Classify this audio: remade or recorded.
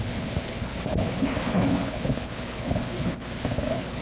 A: remade